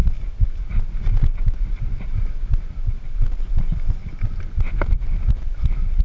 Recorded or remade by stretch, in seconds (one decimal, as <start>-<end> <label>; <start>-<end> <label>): 0.0-6.0 recorded